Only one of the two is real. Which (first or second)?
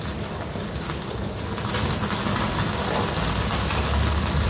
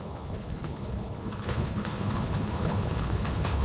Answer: first